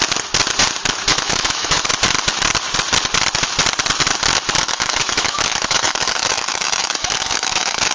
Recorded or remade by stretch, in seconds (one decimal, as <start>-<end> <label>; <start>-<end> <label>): 0.0-1.1 recorded; 1.1-1.9 remade; 1.9-4.6 recorded; 4.6-7.9 remade